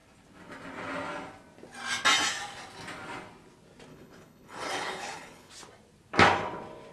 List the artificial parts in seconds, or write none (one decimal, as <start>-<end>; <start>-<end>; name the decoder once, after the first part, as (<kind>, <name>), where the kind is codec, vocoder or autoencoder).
3.9-5.5 (codec, HILCodec)